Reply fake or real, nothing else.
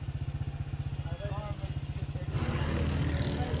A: real